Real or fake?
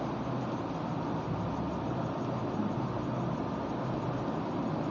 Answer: real